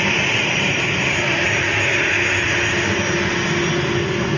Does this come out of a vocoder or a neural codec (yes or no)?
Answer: no